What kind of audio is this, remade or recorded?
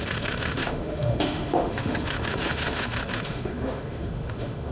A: remade